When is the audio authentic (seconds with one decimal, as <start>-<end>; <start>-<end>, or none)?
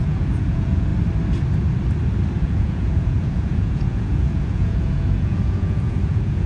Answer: 0.9-2.4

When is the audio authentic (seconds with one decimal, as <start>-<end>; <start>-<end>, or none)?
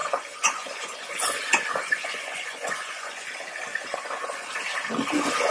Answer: 3.3-3.7; 4.5-5.5